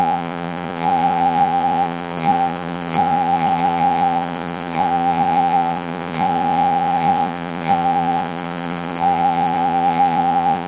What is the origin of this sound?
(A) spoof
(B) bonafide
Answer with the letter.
A